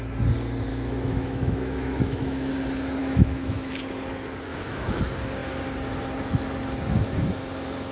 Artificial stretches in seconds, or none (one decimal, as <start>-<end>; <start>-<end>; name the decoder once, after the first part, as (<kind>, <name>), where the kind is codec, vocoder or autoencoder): 0.7-2.5 (autoencoder, DAC-VAE); 3.0-3.7; 4.5-5.0